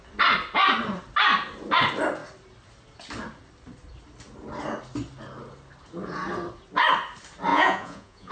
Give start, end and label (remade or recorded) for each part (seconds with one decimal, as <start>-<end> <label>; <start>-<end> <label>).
0.0-7.5 recorded; 7.5-8.3 remade